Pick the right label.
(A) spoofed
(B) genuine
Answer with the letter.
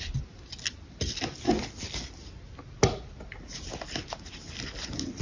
B